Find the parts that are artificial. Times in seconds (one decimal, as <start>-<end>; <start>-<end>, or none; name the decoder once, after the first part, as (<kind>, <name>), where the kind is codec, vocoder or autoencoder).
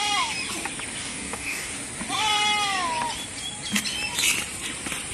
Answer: 1.0-1.7 (codec, DAC)